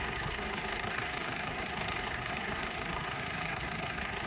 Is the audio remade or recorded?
remade